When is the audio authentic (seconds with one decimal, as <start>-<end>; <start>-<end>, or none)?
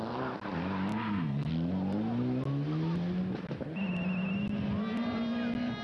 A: 0.0-0.9; 1.5-5.8